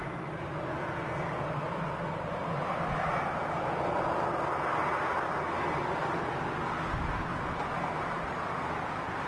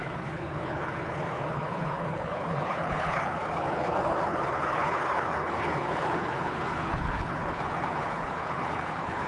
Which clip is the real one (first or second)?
first